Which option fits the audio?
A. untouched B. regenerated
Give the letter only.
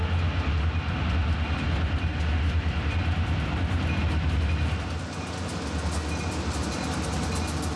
A